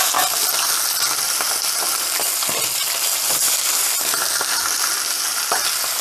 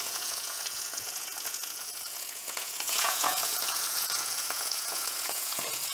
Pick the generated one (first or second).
second